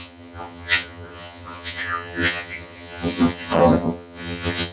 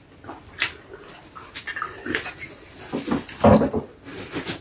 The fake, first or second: first